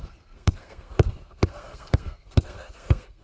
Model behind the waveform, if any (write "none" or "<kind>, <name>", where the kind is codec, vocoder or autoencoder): codec, SNAC